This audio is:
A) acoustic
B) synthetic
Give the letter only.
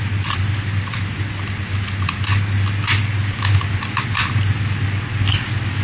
A